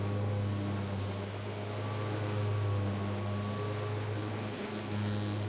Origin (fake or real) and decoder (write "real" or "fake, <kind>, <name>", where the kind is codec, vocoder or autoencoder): real